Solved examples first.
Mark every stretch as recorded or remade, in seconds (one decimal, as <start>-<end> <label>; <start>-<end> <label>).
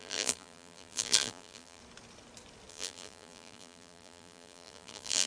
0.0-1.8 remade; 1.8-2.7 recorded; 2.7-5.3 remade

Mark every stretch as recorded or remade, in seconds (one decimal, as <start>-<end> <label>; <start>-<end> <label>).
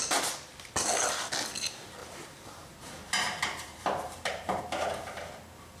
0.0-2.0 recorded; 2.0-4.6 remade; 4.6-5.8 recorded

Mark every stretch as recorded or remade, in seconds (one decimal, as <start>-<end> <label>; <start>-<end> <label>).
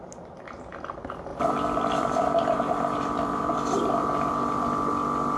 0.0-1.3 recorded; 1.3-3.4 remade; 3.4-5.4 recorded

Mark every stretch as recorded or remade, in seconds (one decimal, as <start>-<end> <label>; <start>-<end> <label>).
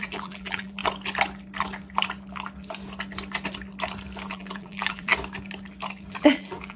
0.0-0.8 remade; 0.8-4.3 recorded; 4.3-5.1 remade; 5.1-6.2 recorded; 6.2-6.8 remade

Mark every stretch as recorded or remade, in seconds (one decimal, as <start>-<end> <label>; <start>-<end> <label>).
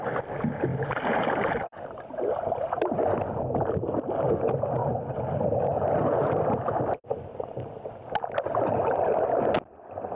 0.0-0.7 recorded; 0.7-2.0 remade; 2.0-4.8 recorded; 4.8-5.6 remade; 5.6-7.3 recorded; 7.3-7.9 remade; 7.9-10.2 recorded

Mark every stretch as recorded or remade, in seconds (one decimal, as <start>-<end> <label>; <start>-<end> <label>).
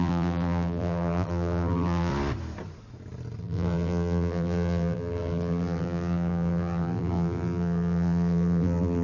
0.0-2.1 remade; 2.1-3.4 recorded; 3.4-9.0 remade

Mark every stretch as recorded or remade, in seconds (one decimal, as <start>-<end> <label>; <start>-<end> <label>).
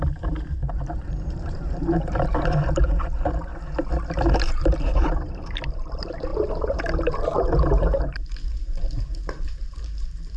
0.0-3.5 remade; 3.5-4.3 recorded; 4.3-10.4 remade